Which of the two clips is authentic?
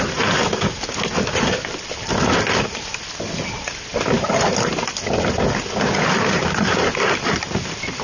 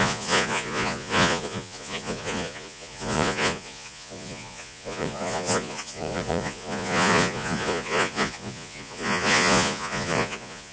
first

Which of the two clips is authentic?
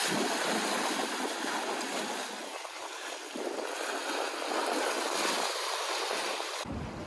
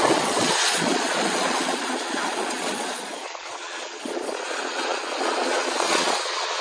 first